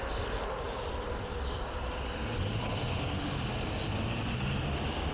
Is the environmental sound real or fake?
real